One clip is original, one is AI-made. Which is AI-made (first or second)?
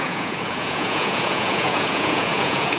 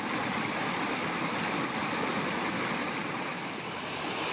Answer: first